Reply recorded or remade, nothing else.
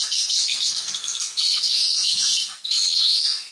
remade